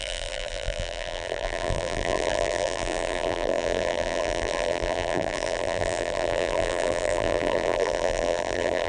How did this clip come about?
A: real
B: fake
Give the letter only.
B